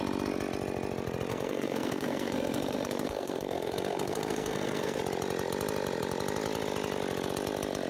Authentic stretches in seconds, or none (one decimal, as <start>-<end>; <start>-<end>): 0.0-1.3; 5.0-7.9